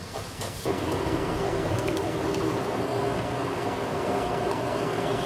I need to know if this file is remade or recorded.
remade